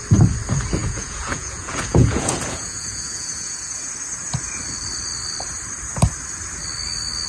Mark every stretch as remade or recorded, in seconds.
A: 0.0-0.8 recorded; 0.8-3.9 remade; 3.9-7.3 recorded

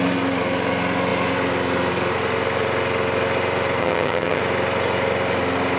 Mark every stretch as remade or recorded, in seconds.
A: 0.0-3.8 recorded; 3.8-4.4 remade; 4.4-5.8 recorded